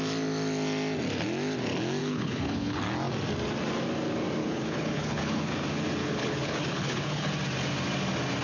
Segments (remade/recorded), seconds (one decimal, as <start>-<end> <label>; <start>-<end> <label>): 0.0-2.0 recorded; 2.0-2.8 remade; 2.8-4.4 recorded; 4.4-5.5 remade; 5.5-6.0 recorded; 6.0-7.3 remade; 7.3-8.4 recorded